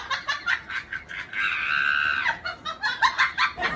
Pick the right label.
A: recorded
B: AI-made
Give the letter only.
A